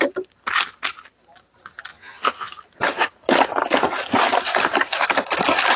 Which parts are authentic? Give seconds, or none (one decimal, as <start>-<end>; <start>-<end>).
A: 0.0-1.9; 2.5-5.8